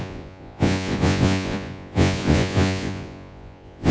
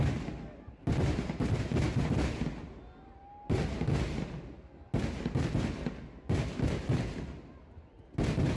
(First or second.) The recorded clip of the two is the second